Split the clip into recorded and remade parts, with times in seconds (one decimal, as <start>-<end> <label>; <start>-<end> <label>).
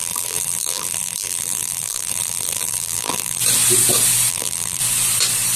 0.0-3.4 remade; 3.4-4.3 recorded; 4.3-4.8 remade; 4.8-5.6 recorded